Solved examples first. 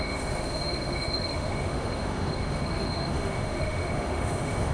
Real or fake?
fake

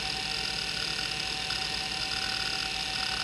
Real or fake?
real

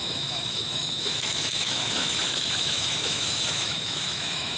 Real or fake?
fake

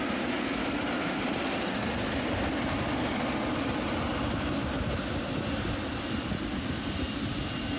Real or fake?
real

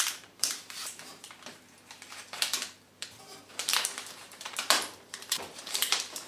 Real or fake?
fake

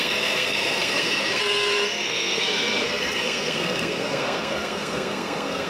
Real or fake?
fake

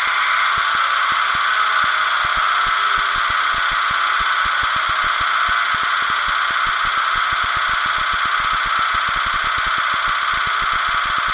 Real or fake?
real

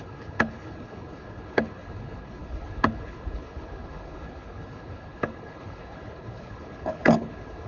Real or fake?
fake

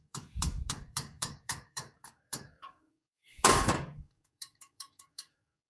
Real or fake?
fake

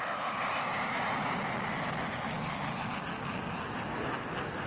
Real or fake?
real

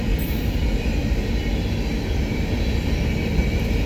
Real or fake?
real